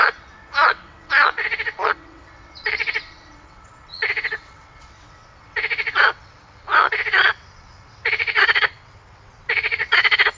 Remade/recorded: remade